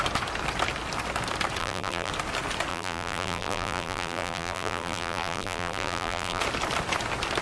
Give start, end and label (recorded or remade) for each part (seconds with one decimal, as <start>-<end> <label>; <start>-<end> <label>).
0.0-1.6 recorded; 1.6-2.1 remade; 2.1-2.7 recorded; 2.7-6.4 remade; 6.4-7.4 recorded